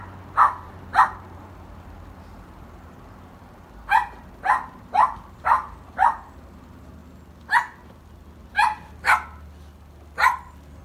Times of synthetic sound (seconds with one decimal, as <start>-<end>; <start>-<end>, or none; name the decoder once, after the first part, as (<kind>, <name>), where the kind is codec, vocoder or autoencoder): 0.0-7.0 (vocoder, BigVGAN v2)